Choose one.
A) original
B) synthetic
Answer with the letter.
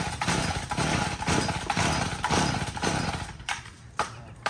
A